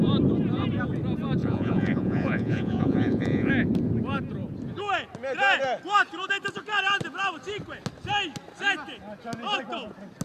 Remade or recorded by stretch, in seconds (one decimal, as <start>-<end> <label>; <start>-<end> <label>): 0.0-1.4 recorded; 1.4-3.5 remade; 3.5-10.2 recorded